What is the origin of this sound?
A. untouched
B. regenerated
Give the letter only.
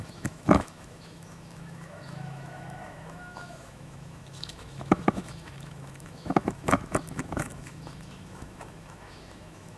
B